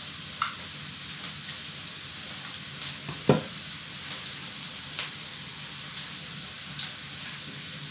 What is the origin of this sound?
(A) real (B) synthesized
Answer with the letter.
A